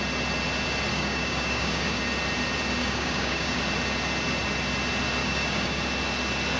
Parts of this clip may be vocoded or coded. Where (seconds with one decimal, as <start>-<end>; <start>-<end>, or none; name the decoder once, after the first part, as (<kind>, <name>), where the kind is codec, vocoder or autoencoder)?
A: 0.9-2.0 (codec, DAC); 2.8-3.6; 5.2-5.8